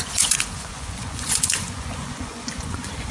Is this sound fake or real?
fake